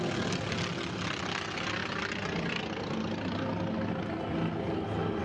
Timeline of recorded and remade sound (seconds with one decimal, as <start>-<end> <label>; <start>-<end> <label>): 0.0-5.2 recorded